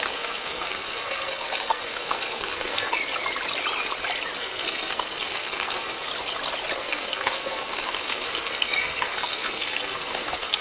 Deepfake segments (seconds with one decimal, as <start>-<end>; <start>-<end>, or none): 0.0-3.0; 4.4-6.1; 6.8-10.6